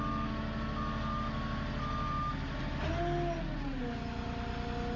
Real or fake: real